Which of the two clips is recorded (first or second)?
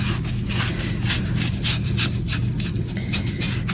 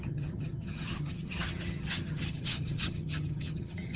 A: first